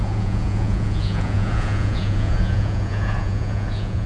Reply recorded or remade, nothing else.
remade